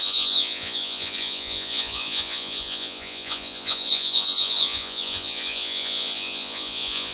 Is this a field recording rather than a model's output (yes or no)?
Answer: no